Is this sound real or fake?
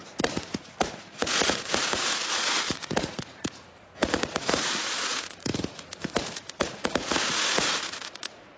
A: fake